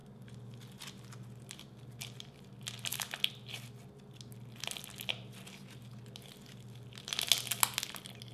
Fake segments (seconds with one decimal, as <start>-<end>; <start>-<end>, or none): none